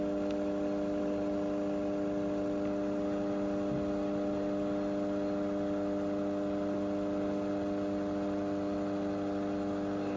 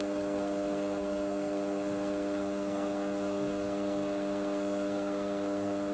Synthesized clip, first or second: second